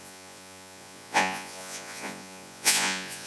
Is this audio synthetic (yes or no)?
yes